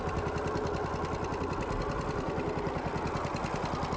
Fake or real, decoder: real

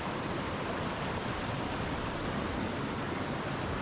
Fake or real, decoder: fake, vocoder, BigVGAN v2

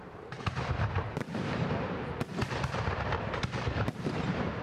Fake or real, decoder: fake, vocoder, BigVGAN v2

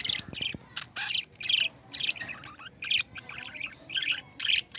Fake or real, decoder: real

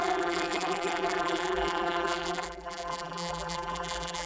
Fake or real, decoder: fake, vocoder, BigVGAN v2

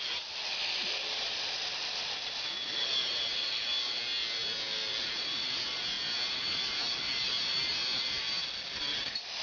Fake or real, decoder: real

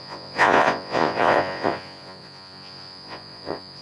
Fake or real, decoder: fake, vocoder, Vocos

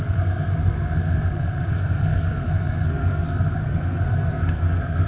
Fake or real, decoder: fake, codec, SNAC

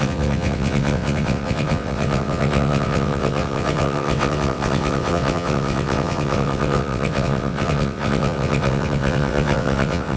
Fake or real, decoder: fake, vocoder, WaveNeXt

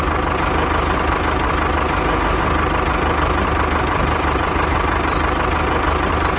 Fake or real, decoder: real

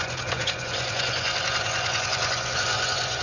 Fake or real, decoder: fake, vocoder, Vocos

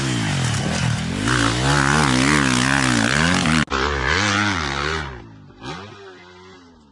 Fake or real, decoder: real